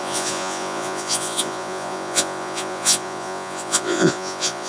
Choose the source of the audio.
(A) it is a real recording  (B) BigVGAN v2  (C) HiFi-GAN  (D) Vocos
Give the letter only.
D